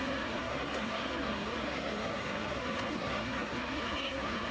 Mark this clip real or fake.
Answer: fake